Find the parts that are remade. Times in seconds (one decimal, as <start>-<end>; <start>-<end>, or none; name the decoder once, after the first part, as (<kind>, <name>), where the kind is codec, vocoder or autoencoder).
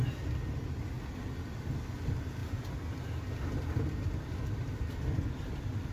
none